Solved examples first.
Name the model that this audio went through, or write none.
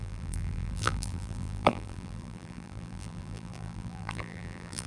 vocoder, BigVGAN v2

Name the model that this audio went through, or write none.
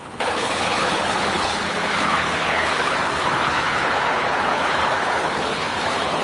codec, HILCodec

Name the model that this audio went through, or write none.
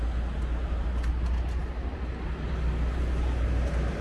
none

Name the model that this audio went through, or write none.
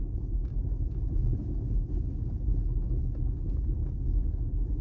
none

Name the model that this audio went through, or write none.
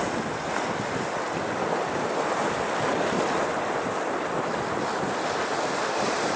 none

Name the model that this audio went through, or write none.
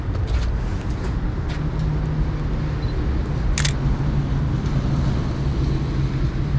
none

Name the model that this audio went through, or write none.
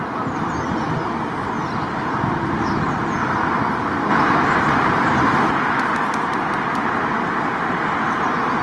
none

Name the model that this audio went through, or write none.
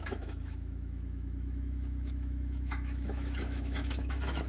autoencoder, DAC-VAE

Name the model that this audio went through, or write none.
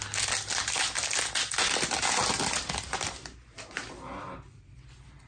none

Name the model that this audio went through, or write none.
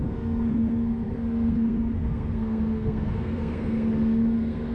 codec, SNAC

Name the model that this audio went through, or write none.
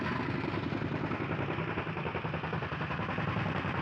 none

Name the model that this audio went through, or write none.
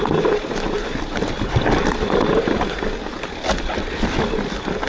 none